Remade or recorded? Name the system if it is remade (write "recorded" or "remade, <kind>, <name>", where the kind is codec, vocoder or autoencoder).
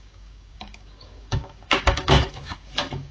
remade, codec, DAC